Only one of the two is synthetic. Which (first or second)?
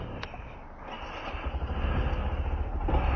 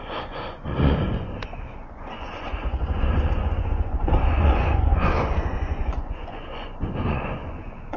second